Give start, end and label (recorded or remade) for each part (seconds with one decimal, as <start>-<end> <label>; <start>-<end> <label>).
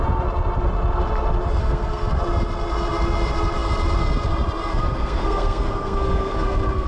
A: 0.0-1.6 recorded; 1.6-2.2 remade; 2.2-4.7 recorded; 4.7-6.9 remade